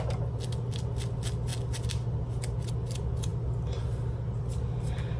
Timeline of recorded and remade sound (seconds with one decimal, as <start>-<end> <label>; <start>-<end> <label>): 0.0-5.2 recorded